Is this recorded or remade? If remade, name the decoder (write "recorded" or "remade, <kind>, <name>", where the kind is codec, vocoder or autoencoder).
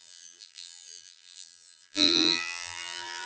remade, vocoder, BigVGAN v2